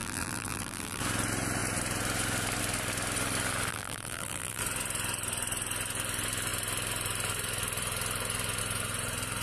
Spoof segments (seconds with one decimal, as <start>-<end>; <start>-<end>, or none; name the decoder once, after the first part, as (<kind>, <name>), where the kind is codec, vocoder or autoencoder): 0.0-1.0 (vocoder, BigVGAN v2); 3.7-4.6